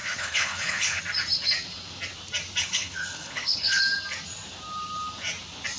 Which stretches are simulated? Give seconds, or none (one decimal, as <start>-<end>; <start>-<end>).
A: 0.0-1.0; 2.6-3.8